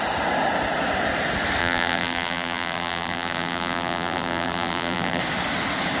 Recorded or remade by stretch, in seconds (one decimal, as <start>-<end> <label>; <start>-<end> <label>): 0.0-1.6 recorded; 1.6-5.2 remade; 5.2-6.0 recorded